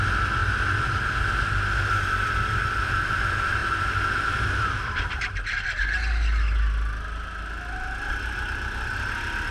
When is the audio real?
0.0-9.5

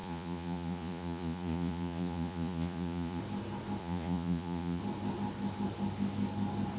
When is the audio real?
3.2-3.8; 4.8-6.8